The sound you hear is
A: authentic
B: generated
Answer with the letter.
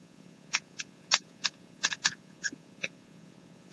B